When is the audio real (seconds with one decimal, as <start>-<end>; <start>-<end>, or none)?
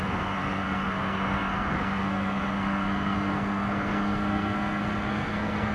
none